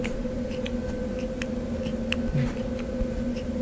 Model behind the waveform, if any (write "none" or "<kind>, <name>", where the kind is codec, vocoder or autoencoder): none